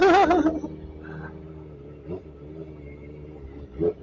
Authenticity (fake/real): real